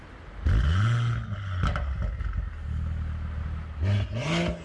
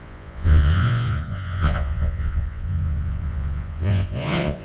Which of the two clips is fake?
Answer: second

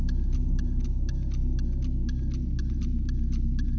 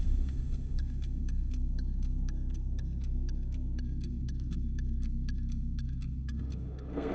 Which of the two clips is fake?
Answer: second